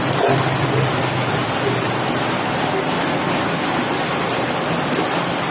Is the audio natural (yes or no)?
yes